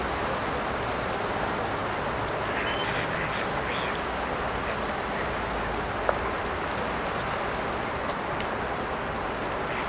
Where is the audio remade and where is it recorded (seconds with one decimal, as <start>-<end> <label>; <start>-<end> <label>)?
0.0-9.9 recorded

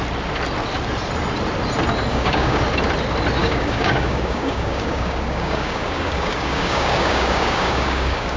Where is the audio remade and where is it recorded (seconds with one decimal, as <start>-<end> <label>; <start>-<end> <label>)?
0.0-2.1 recorded; 2.1-2.6 remade; 2.6-3.4 recorded; 3.4-8.4 remade